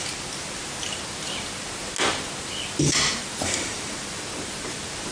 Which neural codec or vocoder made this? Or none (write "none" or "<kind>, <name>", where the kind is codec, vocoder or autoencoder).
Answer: none